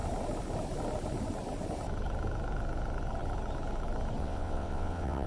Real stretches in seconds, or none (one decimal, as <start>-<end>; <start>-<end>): 0.0-4.2